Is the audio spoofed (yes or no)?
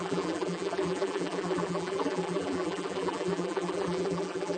yes